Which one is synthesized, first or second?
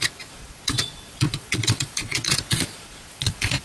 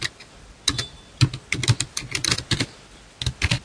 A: first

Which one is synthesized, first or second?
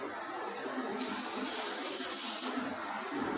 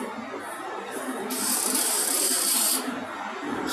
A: second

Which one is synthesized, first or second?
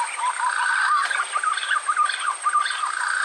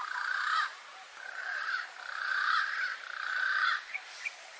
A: second